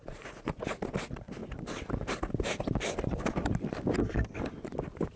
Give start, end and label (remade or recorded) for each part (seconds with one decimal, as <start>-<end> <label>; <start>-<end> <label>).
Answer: 0.0-0.7 remade; 0.7-5.2 recorded